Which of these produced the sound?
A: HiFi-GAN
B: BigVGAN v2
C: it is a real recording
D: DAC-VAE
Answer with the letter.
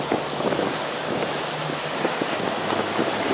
C